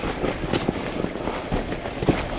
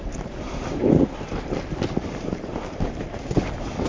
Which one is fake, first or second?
second